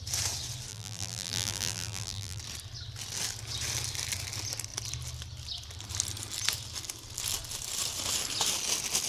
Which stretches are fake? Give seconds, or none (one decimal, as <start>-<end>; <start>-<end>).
0.7-2.4